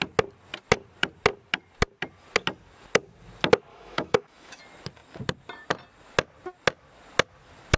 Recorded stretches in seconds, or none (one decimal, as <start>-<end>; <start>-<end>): 0.0-3.7; 4.6-7.8